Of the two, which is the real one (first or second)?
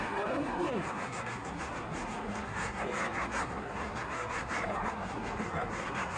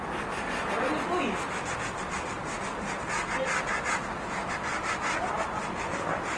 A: second